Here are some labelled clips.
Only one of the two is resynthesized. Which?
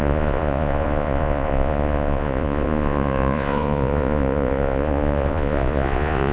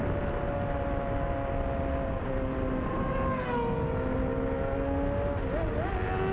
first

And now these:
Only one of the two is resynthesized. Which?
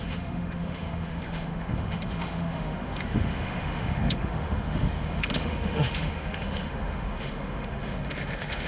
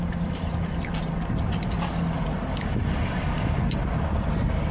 first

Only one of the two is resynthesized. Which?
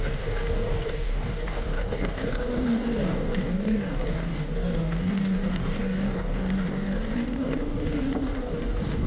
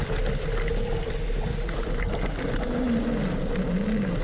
first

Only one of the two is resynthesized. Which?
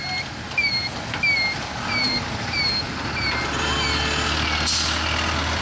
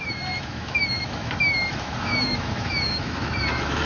second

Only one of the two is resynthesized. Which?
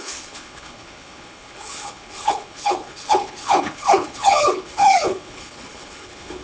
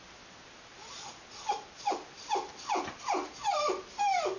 first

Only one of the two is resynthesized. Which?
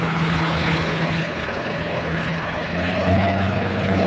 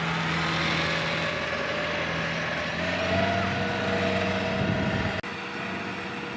first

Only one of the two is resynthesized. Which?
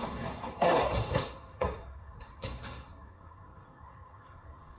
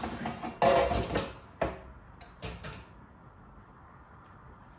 first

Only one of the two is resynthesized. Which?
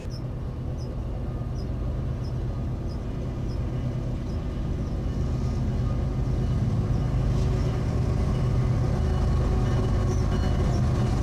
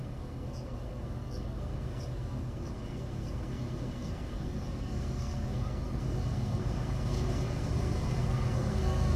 second